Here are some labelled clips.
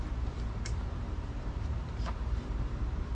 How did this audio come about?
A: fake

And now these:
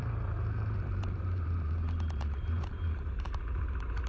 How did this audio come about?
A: fake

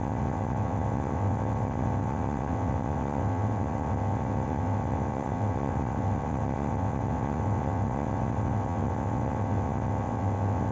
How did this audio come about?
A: fake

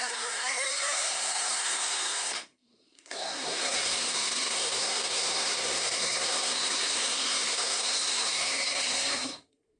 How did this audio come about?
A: fake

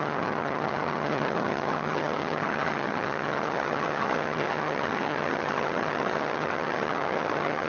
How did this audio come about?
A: fake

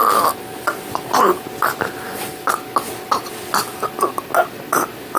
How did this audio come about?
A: real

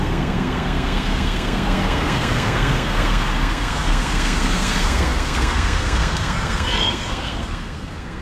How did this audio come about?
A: fake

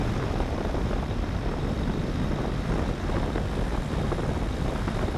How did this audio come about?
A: real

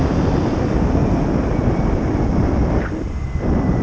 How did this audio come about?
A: real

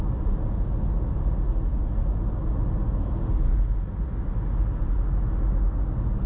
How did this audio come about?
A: real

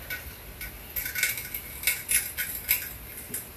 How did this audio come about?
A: real